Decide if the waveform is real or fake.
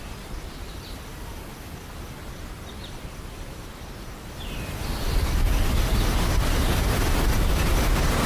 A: real